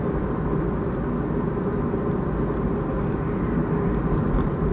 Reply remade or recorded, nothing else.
recorded